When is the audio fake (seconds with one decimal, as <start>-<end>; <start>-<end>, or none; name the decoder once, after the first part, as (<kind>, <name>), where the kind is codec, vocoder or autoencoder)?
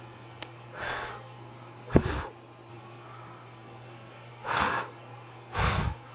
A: 0.0-2.0 (codec, SNAC); 2.7-6.1